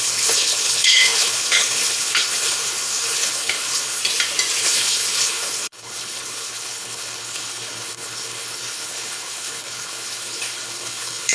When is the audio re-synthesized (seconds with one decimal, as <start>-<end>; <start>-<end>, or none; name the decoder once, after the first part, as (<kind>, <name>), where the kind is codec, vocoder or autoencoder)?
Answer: 0.0-4.0 (codec, HILCodec); 4.6-11.3

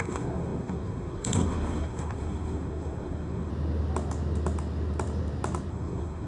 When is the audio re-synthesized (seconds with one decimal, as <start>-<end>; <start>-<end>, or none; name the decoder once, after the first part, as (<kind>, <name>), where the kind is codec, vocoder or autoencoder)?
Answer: 0.0-3.5 (codec, SNAC); 5.7-6.3

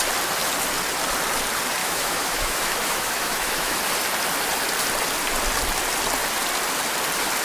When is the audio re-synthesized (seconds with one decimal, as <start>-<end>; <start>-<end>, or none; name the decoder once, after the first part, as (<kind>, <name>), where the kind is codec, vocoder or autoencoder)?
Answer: 1.8-3.8 (autoencoder, DAC-VAE)

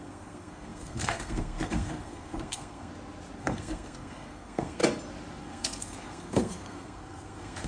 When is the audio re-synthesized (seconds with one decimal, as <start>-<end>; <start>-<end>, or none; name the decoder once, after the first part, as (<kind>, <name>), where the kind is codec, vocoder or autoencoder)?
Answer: 0.0-2.9 (codec, SNAC); 3.4-4.8; 5.4-7.7

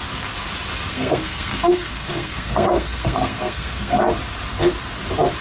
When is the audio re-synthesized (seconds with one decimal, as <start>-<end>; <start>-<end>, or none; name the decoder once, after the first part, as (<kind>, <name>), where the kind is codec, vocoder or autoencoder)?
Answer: 0.9-4.1 (codec, SNAC)

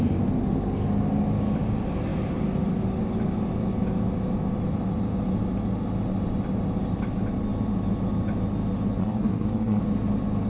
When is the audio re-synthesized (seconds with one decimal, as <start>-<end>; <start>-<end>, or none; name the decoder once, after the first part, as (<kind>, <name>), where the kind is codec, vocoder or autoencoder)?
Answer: 9.0-9.8 (codec, SNAC)

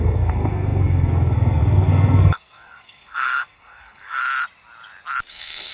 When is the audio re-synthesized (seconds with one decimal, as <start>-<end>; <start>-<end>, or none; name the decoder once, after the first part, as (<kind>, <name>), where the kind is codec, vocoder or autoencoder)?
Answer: 0.0-4.2 (codec, SNAC); 5.3-5.7

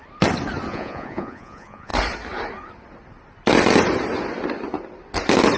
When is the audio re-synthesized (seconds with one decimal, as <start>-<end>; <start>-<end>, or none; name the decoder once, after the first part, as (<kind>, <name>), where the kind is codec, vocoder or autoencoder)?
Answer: 0.7-1.9 (vocoder, Vocos)